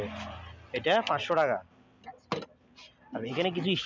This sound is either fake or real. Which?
real